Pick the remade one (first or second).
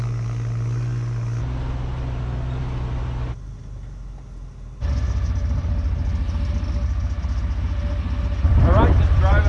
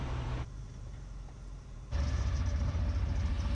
second